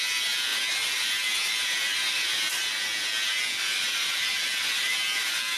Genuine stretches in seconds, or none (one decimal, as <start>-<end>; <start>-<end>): 0.5-3.4